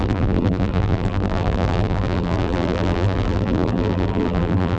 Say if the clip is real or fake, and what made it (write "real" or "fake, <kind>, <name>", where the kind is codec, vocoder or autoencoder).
fake, vocoder, BigVGAN v2